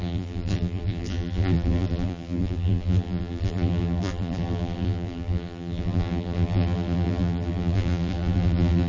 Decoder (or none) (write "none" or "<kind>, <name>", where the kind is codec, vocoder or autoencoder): vocoder, BigVGAN v2